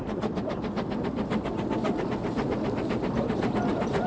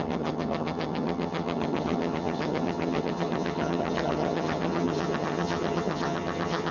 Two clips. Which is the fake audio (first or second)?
second